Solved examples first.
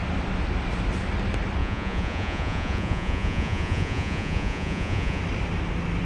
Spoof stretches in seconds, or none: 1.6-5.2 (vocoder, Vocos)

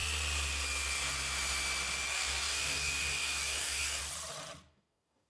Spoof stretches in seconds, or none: 2.1-4.0 (codec, DAC); 4.7-5.3

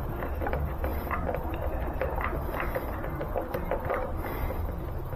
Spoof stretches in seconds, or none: 0.0-5.2 (vocoder, BigVGAN v2)

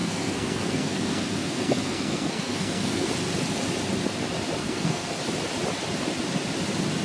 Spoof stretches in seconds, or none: 0.0-3.1 (codec, SNAC); 4.6-5.1

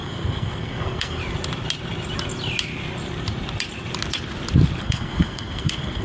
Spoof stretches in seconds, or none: 0.0-1.2 (codec, SNAC); 4.8-6.0

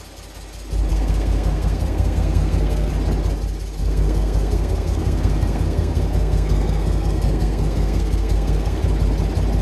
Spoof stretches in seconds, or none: 0.9-2.9 (codec, SNAC); 3.8-8.8

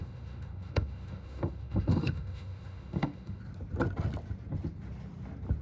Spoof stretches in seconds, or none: 0.0-3.4 (autoencoder, DAC-VAE)